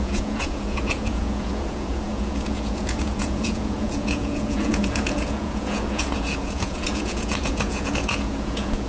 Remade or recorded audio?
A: remade